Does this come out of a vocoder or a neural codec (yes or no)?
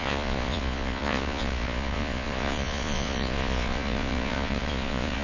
yes